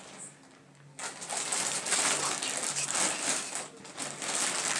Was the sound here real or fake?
real